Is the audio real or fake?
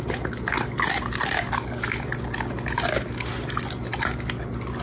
real